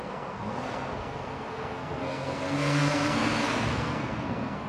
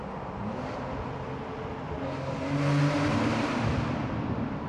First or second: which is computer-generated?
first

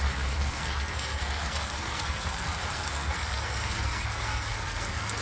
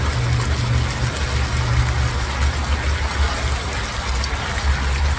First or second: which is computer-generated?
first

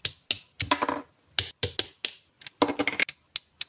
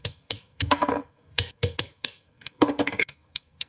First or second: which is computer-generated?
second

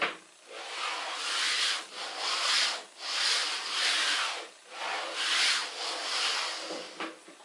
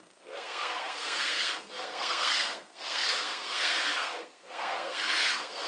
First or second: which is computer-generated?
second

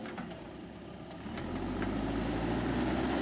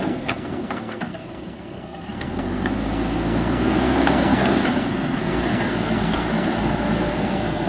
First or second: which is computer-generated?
second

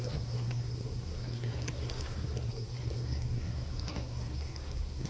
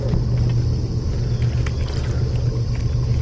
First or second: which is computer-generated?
first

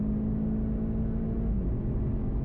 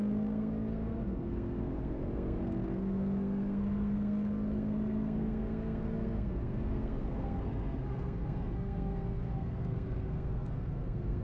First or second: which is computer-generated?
second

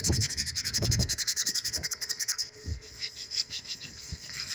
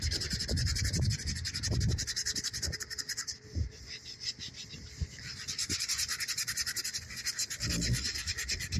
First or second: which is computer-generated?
first